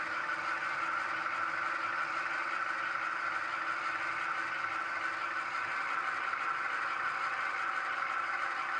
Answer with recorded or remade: recorded